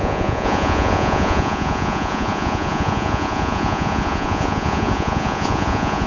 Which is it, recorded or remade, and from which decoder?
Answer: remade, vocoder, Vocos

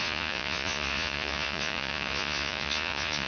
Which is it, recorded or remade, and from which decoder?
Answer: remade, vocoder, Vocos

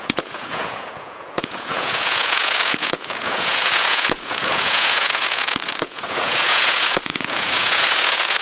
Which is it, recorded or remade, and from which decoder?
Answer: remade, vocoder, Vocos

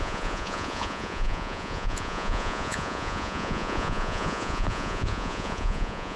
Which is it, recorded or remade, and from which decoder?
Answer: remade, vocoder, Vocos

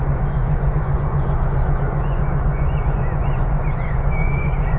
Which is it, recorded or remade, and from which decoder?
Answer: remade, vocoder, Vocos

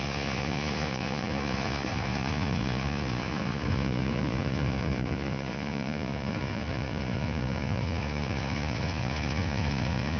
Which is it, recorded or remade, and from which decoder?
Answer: remade, vocoder, Vocos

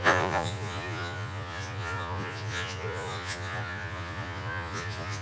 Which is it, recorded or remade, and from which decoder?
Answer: remade, vocoder, Vocos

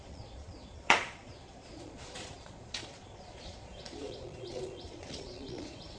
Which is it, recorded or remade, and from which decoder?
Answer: remade, vocoder, Vocos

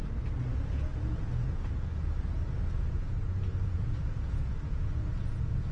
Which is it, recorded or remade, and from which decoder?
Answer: remade, vocoder, Vocos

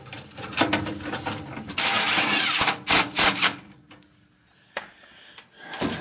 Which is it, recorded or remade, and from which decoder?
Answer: recorded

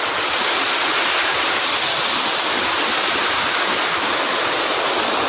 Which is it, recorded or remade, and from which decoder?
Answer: recorded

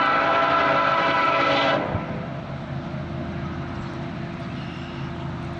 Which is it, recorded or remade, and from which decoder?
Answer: recorded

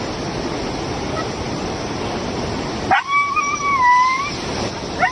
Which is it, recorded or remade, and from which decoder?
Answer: recorded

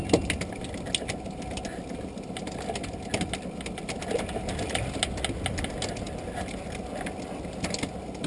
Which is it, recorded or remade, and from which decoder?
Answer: recorded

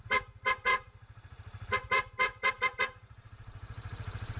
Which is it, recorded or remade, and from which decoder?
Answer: remade, vocoder, Vocos